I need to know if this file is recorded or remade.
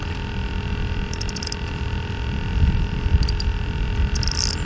recorded